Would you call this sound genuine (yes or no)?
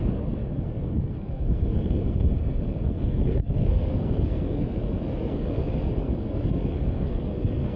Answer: no